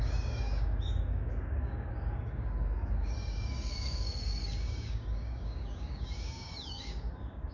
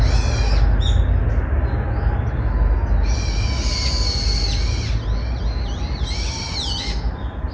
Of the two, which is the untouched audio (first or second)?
second